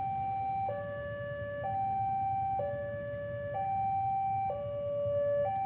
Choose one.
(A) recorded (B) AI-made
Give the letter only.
A